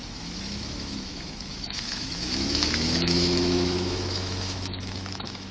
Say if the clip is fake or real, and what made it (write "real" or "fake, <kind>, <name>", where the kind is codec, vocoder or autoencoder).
fake, autoencoder, DAC-VAE